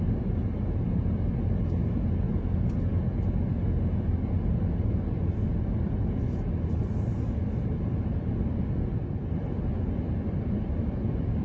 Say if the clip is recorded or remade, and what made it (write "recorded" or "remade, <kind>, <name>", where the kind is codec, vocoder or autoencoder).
recorded